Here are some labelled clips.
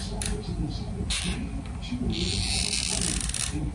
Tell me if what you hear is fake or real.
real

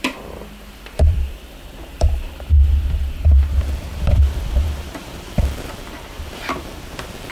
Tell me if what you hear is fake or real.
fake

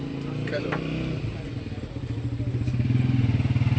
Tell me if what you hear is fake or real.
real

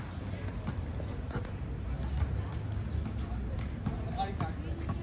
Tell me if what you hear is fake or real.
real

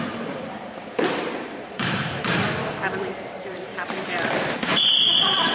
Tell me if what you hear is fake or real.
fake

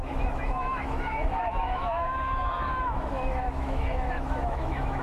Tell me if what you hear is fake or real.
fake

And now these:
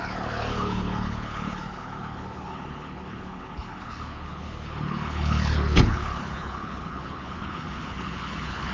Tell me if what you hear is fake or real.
fake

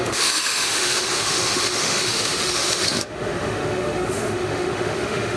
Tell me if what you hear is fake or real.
fake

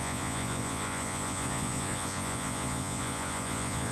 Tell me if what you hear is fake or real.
fake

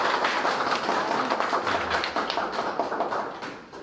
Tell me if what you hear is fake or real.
real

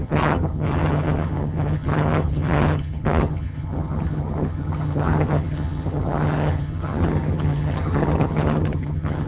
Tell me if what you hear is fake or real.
fake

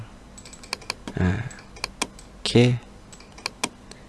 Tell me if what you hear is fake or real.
real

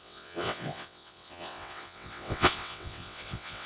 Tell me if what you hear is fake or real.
fake